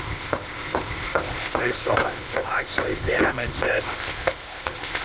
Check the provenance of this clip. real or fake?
fake